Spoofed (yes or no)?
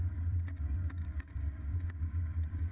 yes